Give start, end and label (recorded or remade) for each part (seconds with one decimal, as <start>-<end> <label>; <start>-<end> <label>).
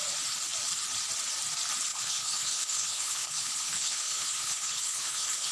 0.0-1.9 recorded; 1.9-5.5 remade